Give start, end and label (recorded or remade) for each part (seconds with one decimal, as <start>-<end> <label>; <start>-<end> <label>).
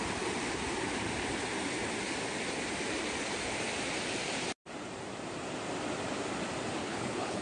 0.0-6.8 recorded; 6.8-7.4 remade